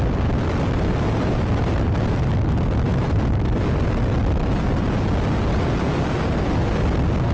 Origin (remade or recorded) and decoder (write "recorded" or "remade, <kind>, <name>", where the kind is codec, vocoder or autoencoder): recorded